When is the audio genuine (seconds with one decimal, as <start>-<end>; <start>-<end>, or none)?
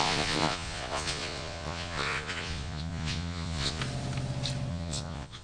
3.8-4.7